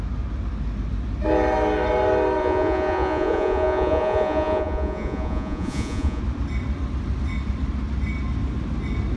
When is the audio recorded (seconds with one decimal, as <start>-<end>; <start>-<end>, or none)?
0.0-2.4; 6.2-9.2